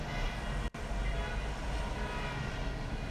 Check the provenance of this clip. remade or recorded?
recorded